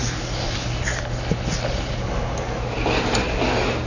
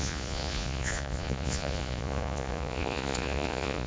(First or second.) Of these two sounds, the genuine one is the first